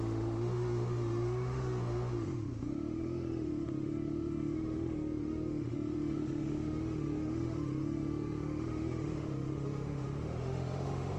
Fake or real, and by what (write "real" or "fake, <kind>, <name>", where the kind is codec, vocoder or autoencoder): fake, autoencoder, DAC-VAE